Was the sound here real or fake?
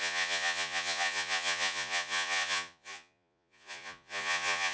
fake